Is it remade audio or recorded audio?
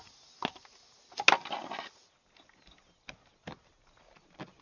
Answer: recorded